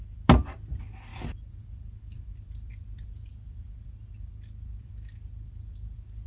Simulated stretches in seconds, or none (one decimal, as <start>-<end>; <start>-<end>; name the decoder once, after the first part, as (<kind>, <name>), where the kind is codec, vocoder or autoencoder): 0.0-6.3 (vocoder, BigVGAN v2)